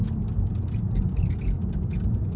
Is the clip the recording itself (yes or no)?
yes